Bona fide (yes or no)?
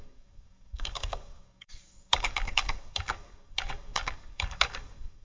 no